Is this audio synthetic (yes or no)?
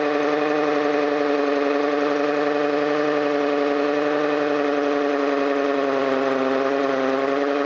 no